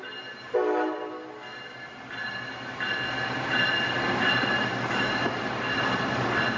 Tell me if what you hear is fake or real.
real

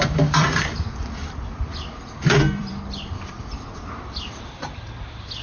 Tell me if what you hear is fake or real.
fake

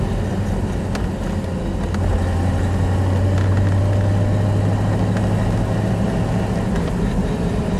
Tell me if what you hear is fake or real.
real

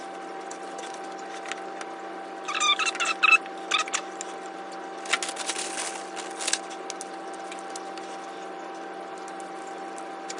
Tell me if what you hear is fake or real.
real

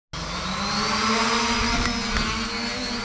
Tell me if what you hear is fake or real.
real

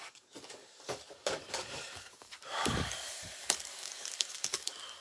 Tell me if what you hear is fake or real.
fake